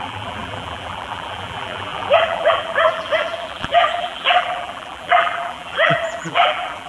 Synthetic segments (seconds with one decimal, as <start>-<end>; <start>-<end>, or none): 0.0-6.9